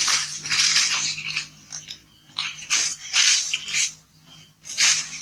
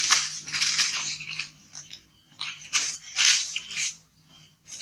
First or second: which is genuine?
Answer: first